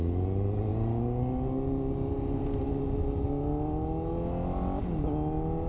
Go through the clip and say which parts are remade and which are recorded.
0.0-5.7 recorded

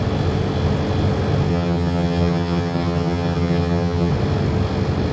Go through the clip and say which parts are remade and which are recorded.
0.0-1.5 recorded; 1.5-4.1 remade; 4.1-5.1 recorded